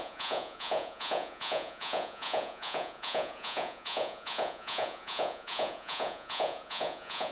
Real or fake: fake